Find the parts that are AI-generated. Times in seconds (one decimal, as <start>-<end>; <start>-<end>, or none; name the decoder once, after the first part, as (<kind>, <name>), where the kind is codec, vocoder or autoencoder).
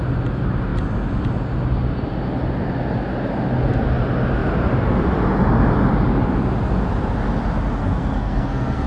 7.8-8.9 (codec, SNAC)